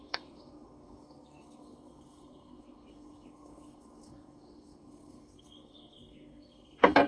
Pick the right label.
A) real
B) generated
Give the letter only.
B